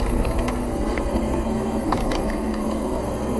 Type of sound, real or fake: fake